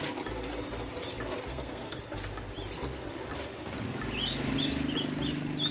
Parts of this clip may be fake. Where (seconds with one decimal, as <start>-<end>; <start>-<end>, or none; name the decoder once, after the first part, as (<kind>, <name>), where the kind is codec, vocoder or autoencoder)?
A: 1.5-2.0 (codec, SNAC)